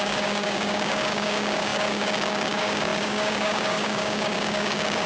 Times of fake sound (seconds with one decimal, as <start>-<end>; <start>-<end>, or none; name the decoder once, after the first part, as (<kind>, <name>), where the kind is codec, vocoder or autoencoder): 0.0-5.1 (codec, DAC)